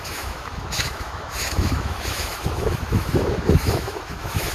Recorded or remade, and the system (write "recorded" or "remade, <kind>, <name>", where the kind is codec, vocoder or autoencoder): remade, autoencoder, DAC-VAE